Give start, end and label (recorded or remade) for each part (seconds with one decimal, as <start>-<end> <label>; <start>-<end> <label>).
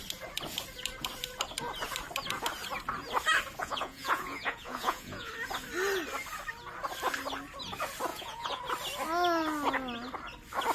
0.0-3.6 recorded; 3.6-5.3 remade; 5.3-8.1 recorded; 8.1-8.6 remade; 8.6-10.7 recorded